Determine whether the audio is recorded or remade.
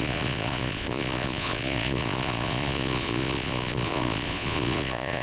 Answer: remade